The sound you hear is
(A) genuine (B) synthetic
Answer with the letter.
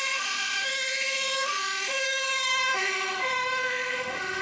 B